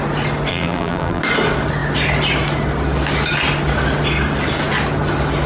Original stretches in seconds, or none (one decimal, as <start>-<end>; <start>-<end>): 0.0-0.5; 1.2-5.5